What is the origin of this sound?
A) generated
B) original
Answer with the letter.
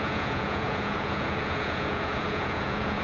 A